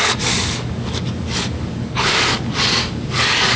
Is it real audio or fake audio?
fake